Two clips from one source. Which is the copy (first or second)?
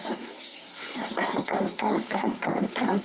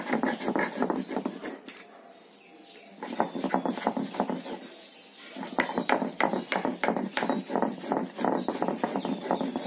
first